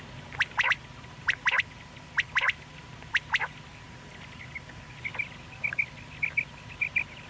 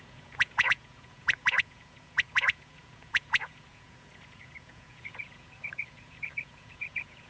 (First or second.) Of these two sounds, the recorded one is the first